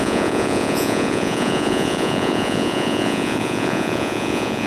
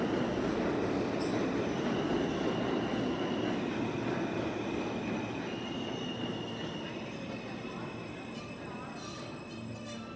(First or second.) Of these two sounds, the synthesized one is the first